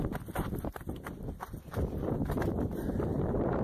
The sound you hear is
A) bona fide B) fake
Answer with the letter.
B